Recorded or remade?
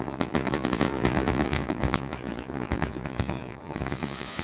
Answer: remade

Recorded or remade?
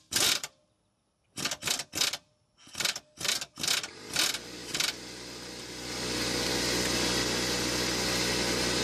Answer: remade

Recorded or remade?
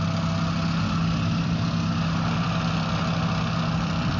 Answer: recorded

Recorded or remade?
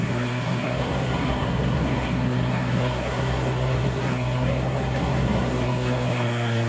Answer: remade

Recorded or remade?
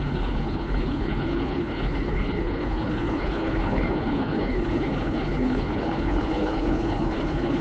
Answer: remade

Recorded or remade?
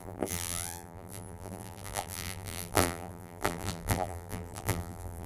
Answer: remade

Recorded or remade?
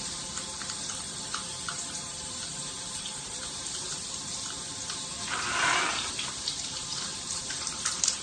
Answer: remade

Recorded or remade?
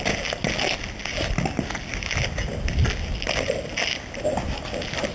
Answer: recorded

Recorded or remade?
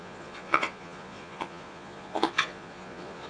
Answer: remade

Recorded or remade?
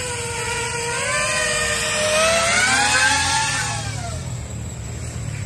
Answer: recorded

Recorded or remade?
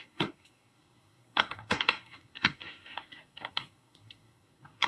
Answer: remade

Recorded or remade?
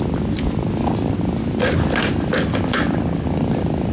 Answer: recorded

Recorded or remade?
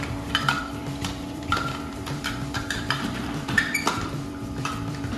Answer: remade